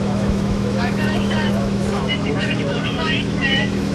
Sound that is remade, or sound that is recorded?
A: remade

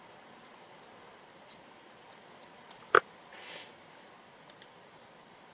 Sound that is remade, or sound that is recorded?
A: recorded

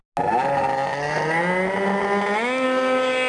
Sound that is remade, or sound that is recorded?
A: recorded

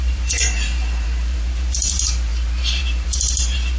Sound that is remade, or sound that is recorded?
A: remade